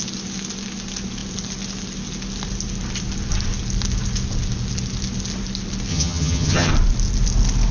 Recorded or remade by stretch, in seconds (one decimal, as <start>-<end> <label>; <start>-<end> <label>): 0.0-5.9 recorded; 5.9-6.7 remade; 6.7-7.7 recorded